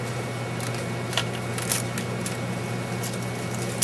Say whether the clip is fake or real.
real